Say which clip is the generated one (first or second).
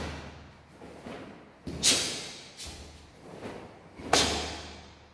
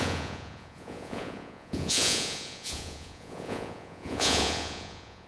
second